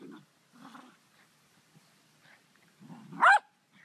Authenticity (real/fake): real